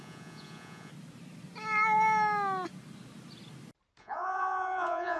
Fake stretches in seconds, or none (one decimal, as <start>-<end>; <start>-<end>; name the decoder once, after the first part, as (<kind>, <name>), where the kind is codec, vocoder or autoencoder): 0.0-0.9 (vocoder, Vocos); 4.0-5.2